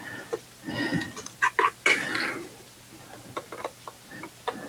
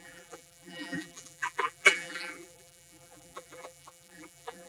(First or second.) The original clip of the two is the first